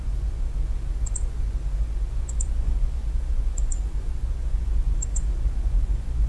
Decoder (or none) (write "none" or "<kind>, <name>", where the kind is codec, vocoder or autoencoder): vocoder, Vocos